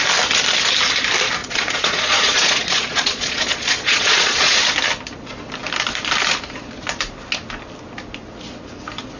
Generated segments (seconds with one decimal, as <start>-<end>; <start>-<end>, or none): 1.4-4.6

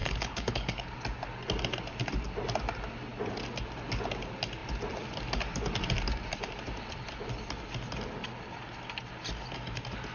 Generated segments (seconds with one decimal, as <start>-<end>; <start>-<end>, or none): 0.0-0.9

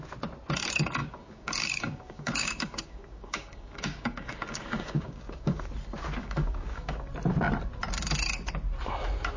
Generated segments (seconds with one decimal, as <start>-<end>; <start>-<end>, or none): 1.0-5.6; 6.2-7.1

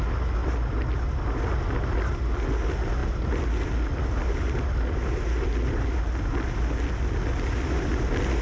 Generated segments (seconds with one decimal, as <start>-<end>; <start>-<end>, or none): none

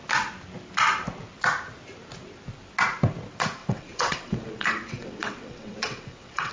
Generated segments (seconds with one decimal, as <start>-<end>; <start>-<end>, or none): 3.6-6.5